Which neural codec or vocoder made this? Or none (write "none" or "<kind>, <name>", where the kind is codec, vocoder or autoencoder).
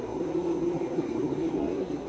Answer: codec, SNAC